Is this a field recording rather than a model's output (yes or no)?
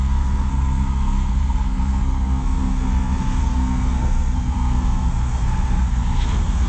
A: no